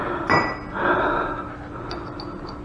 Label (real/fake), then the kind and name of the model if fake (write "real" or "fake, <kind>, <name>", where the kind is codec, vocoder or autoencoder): real